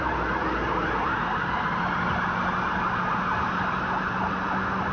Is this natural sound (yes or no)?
yes